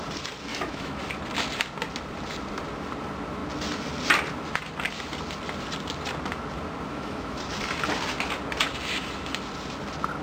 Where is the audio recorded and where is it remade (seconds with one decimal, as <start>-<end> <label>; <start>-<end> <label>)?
0.0-0.5 recorded; 0.5-1.0 remade; 1.0-6.9 recorded; 6.9-7.4 remade; 7.4-10.2 recorded